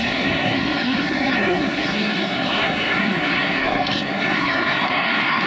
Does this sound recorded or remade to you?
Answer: remade